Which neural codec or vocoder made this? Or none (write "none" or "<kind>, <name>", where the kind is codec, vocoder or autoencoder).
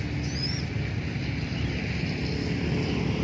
none